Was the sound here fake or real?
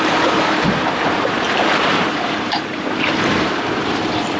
fake